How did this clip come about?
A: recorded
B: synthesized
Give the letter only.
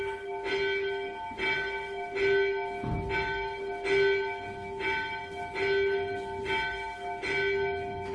A